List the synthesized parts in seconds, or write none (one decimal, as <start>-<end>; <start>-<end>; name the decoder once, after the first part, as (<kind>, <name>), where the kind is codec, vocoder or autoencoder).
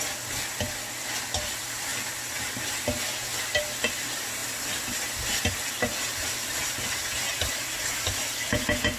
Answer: 0.0-1.9 (vocoder, BigVGAN v2); 3.6-4.4; 5.4-9.0